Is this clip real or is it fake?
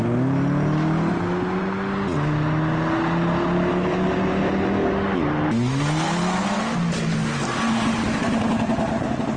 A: real